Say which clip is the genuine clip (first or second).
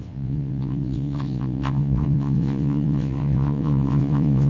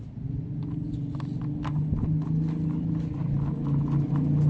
second